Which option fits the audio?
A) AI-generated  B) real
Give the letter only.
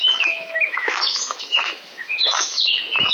A